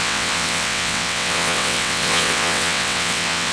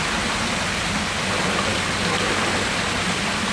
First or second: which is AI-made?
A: first